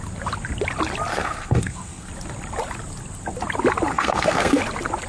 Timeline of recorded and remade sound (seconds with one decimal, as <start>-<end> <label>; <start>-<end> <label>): 0.0-1.1 recorded; 1.1-2.1 remade; 2.1-3.9 recorded; 3.9-4.6 remade; 4.6-5.1 recorded